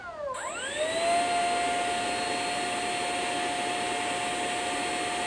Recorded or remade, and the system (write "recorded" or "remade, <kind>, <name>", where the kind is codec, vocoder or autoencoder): recorded